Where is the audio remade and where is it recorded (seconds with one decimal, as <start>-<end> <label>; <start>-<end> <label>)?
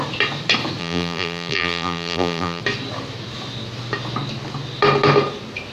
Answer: 0.0-0.8 recorded; 0.8-2.6 remade; 2.6-5.7 recorded